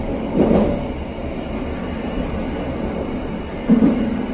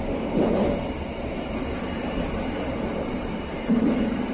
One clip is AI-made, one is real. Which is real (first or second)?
first